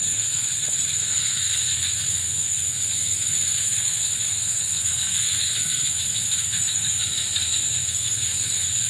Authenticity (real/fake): fake